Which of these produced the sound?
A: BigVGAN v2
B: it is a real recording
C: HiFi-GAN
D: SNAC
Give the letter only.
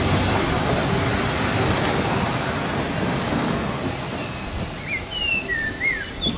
B